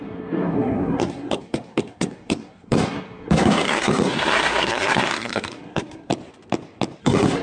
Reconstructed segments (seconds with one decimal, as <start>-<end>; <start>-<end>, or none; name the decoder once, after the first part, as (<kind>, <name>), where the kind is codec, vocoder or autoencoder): 0.0-6.1 (codec, SNAC); 7.0-7.4